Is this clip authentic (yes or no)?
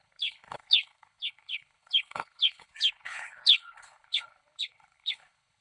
no